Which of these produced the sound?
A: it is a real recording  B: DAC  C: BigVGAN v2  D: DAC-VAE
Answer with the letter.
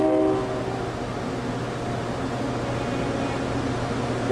A